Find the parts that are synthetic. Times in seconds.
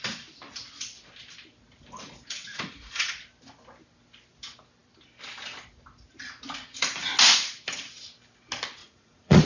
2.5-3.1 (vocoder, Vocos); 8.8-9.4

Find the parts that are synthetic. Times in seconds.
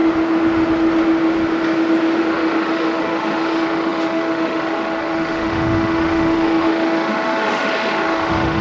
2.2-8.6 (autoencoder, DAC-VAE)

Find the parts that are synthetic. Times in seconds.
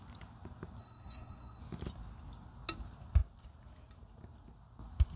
0.8-1.6 (codec, SNAC)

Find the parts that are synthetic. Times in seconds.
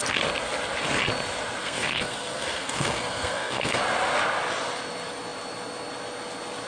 1.6-3.8 (codec, SNAC)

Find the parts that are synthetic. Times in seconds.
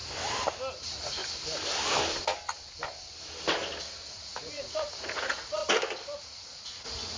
0.7-1.2 (vocoder, Vocos); 4.1-5.6; 6.2-7.2